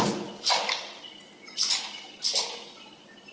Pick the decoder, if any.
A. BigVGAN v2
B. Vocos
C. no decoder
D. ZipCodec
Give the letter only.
C